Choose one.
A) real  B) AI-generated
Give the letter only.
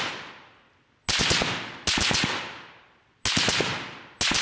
A